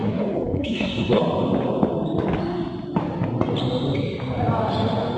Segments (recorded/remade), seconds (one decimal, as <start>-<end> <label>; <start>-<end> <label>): 0.0-1.2 remade; 1.2-5.2 recorded